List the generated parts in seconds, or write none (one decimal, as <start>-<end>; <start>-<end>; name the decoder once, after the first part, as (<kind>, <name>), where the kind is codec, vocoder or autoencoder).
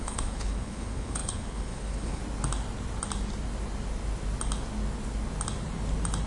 0.0-2.2 (codec, HILCodec)